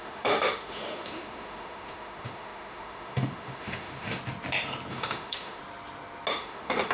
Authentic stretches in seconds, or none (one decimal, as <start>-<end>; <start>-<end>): 4.2-4.9; 5.6-6.3